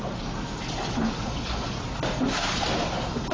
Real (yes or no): yes